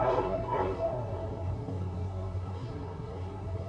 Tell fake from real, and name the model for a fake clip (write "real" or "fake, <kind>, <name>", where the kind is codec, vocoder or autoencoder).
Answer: fake, codec, SNAC